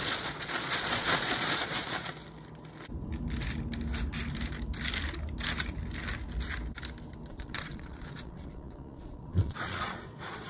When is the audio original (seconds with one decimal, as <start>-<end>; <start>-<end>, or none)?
2.1-7.3

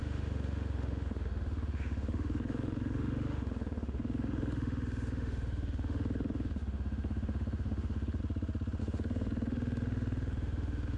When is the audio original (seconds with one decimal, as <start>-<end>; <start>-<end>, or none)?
8.2-8.8

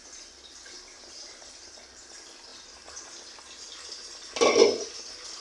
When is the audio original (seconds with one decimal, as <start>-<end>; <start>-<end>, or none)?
0.0-5.4

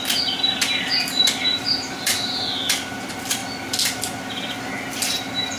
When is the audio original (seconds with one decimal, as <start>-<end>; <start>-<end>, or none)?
0.0-1.5; 2.4-5.6

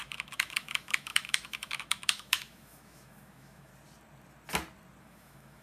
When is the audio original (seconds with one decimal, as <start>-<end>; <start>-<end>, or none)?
3.7-5.0

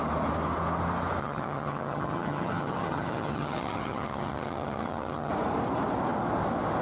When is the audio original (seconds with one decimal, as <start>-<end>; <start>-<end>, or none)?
0.0-1.2; 5.3-6.8